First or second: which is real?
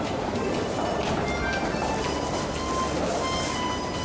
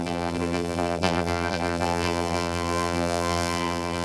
first